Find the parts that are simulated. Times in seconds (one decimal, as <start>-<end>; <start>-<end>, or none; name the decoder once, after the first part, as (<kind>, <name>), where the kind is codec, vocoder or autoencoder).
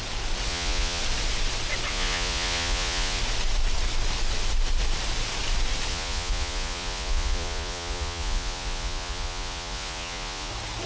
0.5-1.0 (vocoder, Vocos); 1.9-3.2; 5.9-10.5